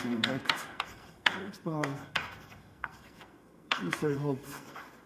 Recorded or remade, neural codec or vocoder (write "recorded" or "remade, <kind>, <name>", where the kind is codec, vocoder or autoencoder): remade, codec, SNAC